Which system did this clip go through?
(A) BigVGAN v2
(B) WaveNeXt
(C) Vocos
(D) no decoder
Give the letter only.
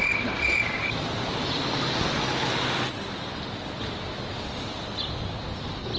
D